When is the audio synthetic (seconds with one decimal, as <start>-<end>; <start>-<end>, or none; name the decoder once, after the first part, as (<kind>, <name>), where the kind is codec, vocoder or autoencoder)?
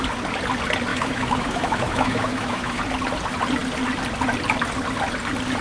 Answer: 0.9-2.8 (autoencoder, DAC-VAE)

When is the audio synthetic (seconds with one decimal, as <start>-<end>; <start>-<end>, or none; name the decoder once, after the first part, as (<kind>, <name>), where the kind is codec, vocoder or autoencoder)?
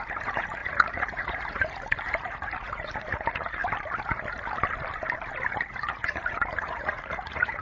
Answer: 0.0-3.6 (vocoder, Vocos); 5.6-7.6